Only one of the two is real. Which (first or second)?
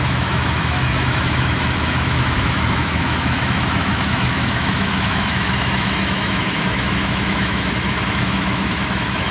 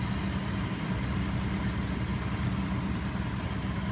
second